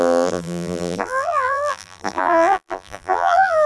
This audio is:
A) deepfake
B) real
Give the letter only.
A